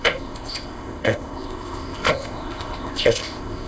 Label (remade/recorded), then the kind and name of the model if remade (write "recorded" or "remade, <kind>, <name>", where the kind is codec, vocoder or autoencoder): remade, codec, ZipCodec